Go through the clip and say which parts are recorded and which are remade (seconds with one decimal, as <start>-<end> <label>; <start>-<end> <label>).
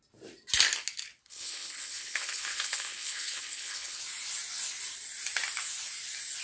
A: 0.0-1.2 recorded; 1.2-4.0 remade; 4.0-6.4 recorded